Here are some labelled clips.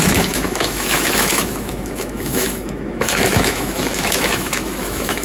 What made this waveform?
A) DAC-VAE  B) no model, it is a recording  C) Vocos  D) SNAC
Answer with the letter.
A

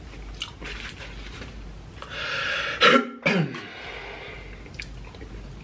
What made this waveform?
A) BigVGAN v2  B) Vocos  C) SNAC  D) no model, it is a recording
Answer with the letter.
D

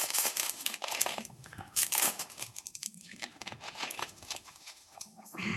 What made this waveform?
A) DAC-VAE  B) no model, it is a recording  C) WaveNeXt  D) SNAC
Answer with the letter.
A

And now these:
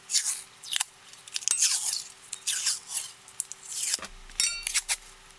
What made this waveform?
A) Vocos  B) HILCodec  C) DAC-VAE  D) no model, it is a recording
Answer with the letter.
D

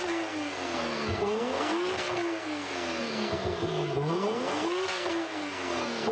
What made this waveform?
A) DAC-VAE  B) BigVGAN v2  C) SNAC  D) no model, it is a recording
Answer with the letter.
C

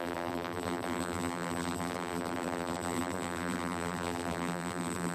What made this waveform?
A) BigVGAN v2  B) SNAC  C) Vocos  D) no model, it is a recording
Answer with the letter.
A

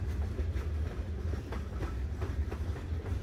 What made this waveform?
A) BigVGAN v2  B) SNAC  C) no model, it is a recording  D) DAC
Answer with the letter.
A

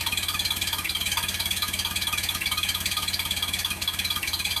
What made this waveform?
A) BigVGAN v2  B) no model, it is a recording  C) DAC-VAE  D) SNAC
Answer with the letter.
C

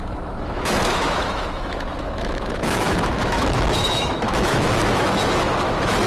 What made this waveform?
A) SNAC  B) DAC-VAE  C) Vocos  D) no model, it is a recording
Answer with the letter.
B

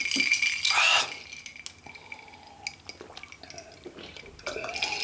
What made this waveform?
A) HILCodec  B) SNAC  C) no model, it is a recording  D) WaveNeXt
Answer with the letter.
C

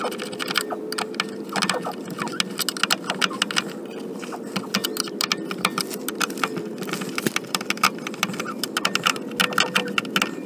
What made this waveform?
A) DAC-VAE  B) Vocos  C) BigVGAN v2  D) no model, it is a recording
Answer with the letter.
D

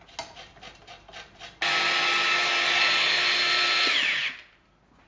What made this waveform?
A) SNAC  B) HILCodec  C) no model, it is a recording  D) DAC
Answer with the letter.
C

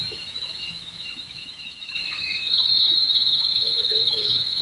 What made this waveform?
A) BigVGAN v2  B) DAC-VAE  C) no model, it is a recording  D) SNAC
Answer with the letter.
B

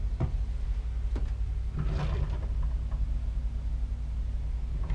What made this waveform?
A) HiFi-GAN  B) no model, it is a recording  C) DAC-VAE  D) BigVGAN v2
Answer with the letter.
B